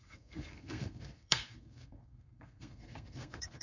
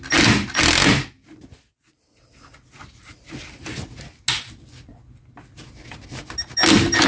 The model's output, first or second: first